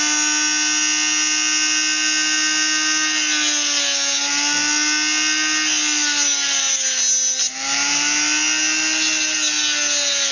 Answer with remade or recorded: recorded